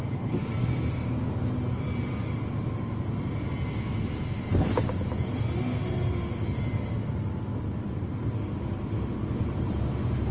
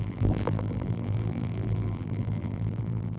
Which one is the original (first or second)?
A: first